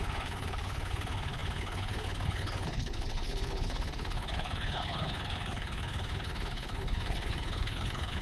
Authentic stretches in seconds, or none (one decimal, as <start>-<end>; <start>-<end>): none